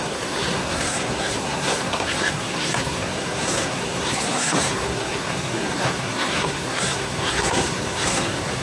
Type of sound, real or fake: fake